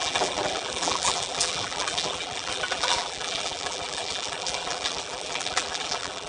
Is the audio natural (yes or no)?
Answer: no